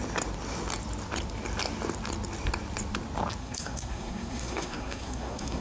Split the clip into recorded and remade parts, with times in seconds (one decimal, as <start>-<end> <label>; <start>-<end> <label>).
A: 0.0-3.4 recorded; 3.4-5.6 remade